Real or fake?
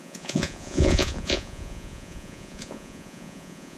fake